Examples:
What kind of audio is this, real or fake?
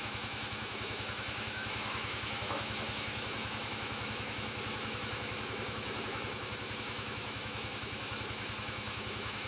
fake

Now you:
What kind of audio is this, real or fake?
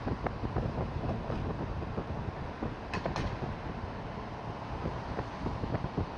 real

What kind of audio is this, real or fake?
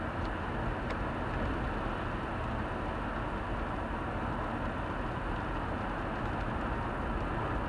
real